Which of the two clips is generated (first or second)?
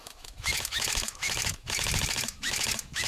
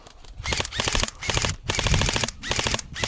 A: first